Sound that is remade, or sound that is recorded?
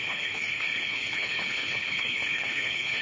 remade